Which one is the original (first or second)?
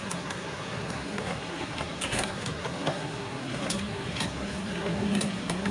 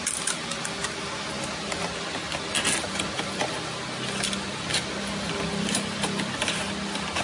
second